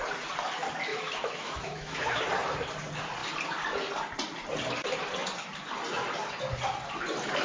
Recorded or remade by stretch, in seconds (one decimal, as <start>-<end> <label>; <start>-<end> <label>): 0.0-0.9 recorded; 0.9-2.2 remade; 2.2-7.4 recorded